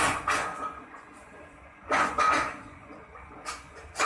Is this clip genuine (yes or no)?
no